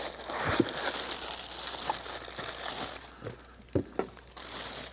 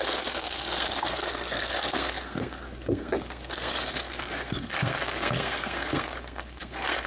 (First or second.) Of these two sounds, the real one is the first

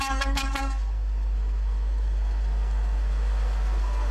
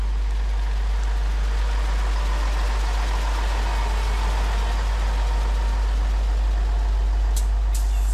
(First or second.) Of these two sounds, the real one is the second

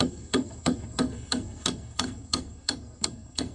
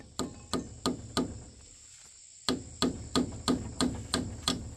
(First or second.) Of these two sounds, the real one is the second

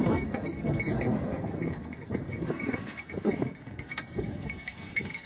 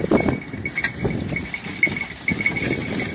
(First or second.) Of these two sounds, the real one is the second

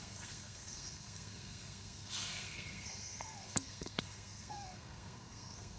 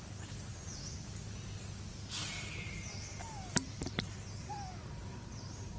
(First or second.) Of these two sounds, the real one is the second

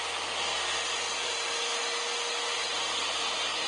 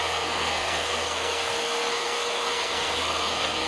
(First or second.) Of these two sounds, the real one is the first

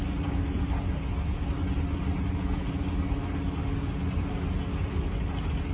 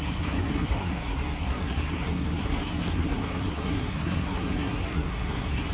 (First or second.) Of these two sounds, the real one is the first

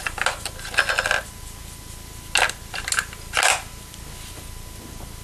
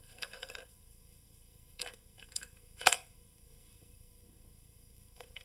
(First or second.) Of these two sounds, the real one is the first